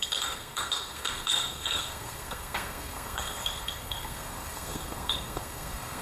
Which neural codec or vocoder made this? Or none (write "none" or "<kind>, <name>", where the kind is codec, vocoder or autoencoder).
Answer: codec, SNAC